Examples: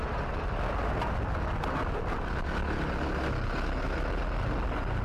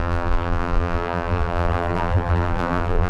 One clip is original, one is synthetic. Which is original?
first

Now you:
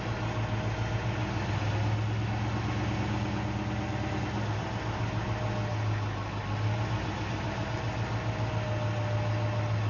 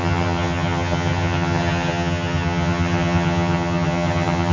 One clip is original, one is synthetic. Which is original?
first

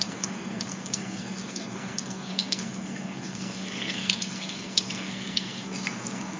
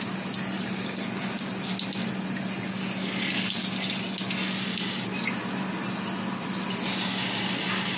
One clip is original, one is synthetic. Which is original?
second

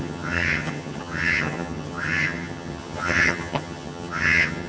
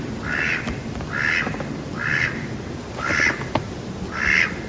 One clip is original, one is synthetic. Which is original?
second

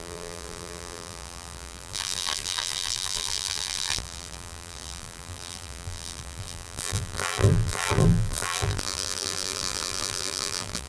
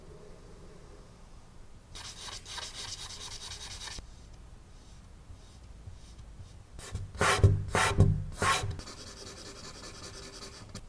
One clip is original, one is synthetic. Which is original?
second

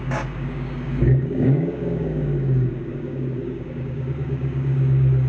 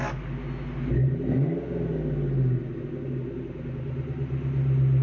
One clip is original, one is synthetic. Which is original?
second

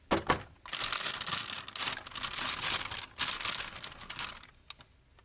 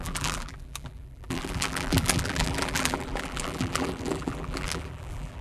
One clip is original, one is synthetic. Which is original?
first